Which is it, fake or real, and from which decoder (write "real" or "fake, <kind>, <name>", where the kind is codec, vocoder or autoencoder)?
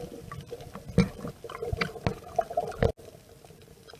real